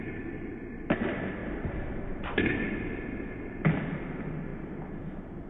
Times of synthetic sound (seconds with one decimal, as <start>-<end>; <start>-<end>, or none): none